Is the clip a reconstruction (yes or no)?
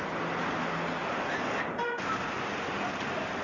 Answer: no